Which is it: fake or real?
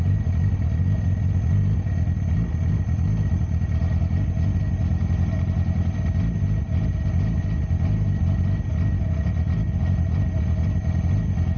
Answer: real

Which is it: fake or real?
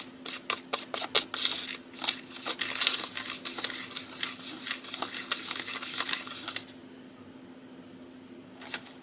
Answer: real